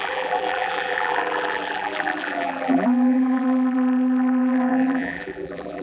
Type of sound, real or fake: fake